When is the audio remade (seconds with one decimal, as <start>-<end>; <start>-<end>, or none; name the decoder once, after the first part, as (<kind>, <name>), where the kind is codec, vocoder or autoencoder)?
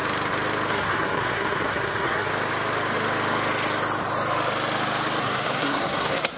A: 0.7-2.3 (codec, SNAC); 5.2-6.4